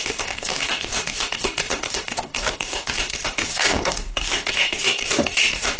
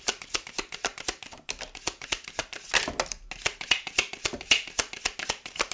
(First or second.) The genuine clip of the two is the second